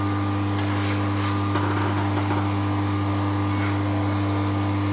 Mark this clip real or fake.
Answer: real